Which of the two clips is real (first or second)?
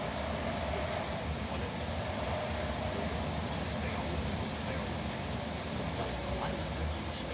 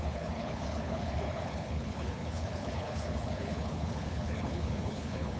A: first